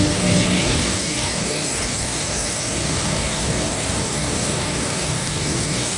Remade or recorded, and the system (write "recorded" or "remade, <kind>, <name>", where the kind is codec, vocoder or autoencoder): remade, codec, DAC